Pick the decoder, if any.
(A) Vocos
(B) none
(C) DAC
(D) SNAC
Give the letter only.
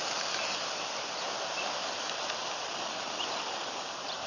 B